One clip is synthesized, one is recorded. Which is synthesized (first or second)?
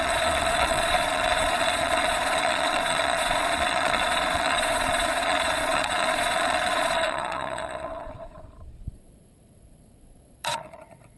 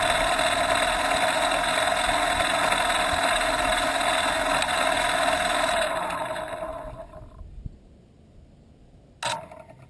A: first